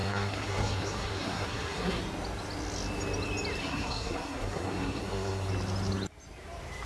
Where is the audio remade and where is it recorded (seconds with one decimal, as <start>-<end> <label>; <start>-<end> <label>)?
0.0-2.0 remade; 2.0-3.6 recorded; 3.6-5.5 remade; 5.5-6.9 recorded